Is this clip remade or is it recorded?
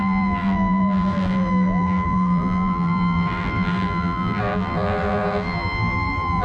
remade